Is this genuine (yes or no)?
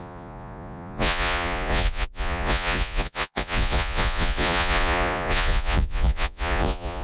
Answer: no